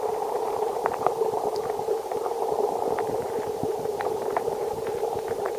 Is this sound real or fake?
fake